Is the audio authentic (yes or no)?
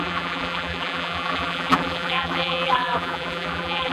no